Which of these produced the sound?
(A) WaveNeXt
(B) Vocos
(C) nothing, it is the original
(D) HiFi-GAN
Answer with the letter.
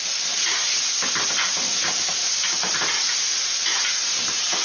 C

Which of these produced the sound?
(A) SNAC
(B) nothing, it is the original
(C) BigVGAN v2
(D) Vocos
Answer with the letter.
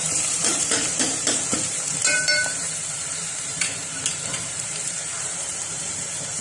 C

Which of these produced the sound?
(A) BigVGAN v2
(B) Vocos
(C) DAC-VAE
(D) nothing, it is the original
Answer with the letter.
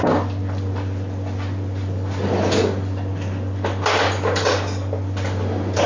D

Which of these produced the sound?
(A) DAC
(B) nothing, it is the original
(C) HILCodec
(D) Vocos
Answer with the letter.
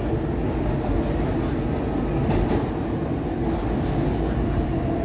B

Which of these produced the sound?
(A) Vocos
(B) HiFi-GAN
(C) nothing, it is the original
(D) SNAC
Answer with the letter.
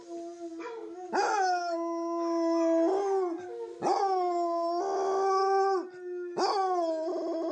C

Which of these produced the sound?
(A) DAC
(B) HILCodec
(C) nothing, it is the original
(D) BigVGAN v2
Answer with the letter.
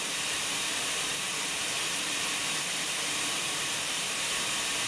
D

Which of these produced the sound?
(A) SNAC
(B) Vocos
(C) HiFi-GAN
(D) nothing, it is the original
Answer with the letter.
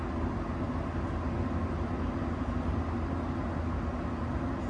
D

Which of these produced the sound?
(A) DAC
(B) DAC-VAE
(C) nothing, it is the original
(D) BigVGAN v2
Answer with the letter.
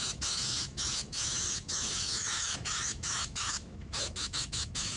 B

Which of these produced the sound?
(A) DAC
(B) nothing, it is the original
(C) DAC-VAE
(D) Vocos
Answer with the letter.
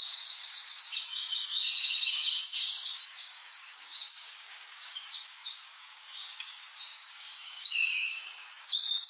A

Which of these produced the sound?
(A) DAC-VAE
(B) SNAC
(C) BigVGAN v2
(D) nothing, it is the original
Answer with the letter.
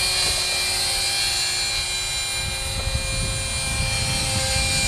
D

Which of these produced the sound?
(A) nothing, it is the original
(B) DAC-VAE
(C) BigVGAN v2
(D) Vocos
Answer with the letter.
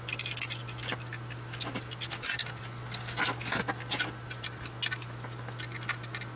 A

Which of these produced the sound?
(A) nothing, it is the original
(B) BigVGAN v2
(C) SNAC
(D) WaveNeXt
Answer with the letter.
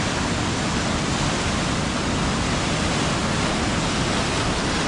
A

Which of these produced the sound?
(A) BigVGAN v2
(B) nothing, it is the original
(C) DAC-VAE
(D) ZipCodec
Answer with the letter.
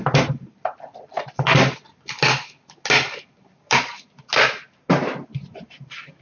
B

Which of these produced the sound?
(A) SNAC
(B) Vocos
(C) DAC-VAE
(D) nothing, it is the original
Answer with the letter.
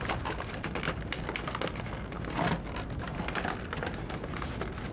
D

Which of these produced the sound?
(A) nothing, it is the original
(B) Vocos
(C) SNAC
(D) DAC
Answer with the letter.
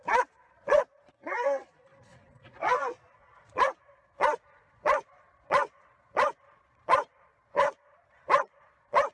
B